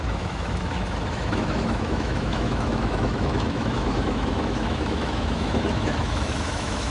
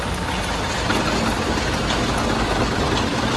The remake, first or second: first